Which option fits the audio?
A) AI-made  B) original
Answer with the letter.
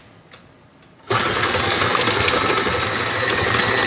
B